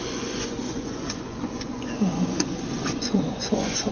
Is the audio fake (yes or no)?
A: yes